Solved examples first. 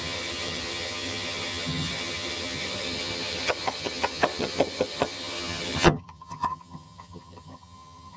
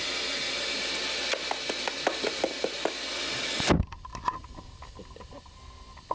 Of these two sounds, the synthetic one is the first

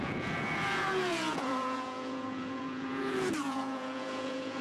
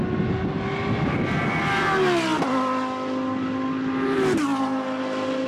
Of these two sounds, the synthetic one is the first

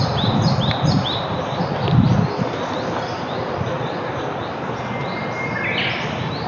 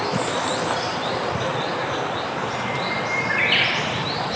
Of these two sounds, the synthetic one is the second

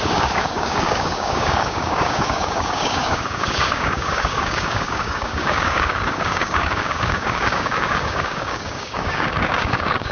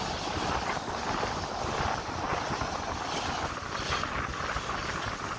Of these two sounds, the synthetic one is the first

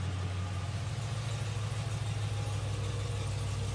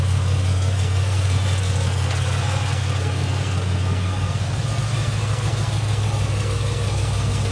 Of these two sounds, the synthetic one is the second